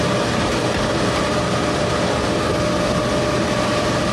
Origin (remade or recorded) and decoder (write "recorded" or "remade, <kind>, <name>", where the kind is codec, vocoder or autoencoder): recorded